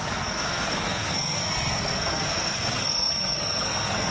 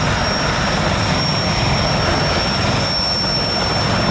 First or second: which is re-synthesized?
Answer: first